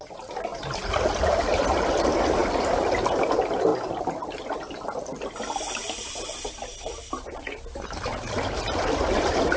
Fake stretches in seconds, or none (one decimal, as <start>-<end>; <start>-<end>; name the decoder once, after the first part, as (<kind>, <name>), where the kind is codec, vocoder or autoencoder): 3.7-5.3 (vocoder, BigVGAN v2); 5.8-9.6